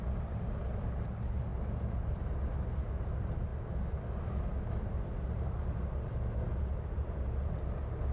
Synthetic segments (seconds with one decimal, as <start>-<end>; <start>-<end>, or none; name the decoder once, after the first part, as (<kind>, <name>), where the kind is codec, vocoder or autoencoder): none